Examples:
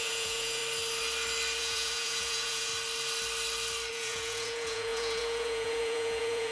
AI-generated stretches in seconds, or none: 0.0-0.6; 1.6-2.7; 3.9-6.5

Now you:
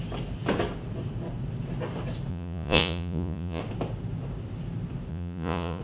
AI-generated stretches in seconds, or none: 2.3-3.6; 5.1-5.8